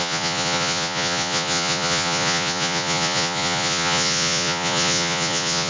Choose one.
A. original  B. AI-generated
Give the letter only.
B